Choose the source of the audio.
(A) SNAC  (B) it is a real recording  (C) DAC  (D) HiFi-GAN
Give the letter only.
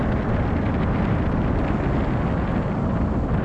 B